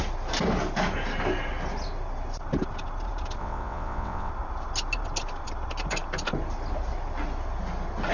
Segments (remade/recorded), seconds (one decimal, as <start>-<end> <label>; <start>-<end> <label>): 0.0-3.4 recorded; 3.4-4.3 remade; 4.3-8.1 recorded